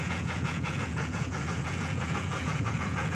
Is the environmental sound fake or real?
fake